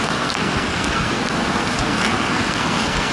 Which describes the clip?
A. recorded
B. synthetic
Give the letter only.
B